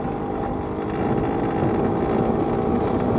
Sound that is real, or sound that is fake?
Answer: real